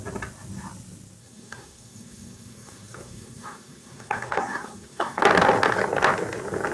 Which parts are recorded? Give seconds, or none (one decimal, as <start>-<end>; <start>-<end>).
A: 0.0-1.2; 5.2-6.7